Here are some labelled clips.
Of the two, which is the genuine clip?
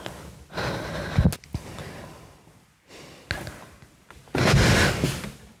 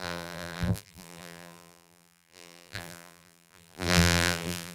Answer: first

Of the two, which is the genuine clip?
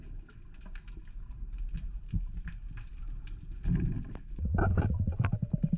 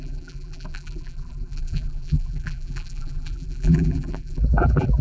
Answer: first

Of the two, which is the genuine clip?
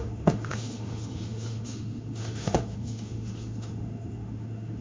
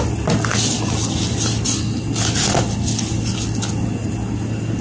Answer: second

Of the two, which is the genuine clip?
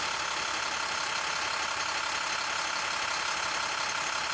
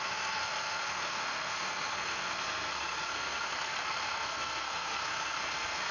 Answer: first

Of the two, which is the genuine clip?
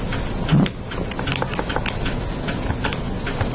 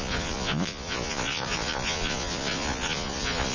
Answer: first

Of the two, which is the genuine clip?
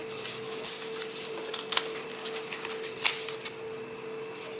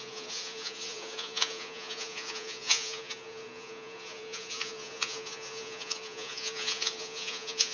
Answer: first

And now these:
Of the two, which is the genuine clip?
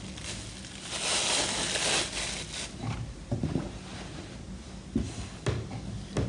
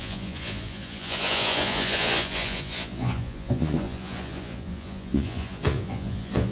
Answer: first